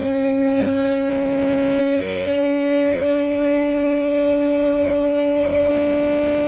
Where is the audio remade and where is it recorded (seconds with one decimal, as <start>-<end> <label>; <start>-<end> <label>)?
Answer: 0.0-1.1 remade; 1.1-1.8 recorded; 1.8-5.7 remade; 5.7-6.5 recorded